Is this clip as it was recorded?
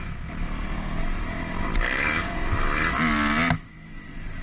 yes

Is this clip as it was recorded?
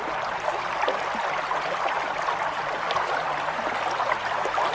yes